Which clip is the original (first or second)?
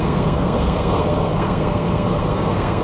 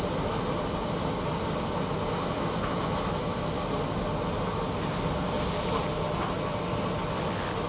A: second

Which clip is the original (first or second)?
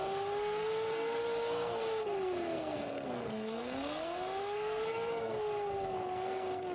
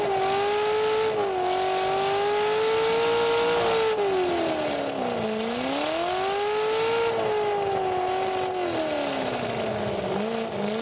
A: second